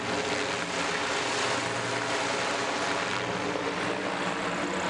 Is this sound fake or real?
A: real